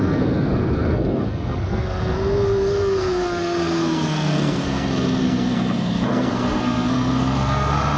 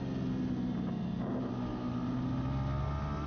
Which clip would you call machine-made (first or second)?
first